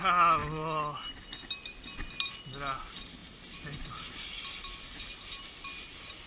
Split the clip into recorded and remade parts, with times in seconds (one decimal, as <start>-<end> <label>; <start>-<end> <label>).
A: 0.0-6.3 recorded